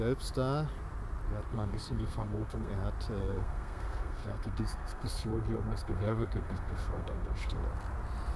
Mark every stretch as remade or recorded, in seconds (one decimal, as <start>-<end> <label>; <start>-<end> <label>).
0.0-1.5 recorded; 1.5-2.7 remade; 2.7-3.2 recorded; 3.2-7.6 remade; 7.6-8.4 recorded